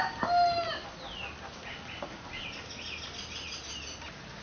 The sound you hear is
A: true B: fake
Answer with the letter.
A